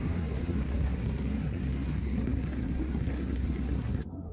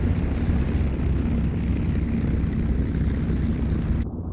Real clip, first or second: second